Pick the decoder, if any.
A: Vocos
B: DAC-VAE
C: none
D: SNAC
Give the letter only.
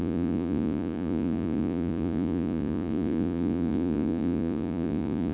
A